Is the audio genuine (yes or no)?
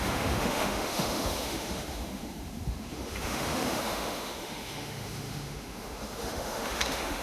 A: no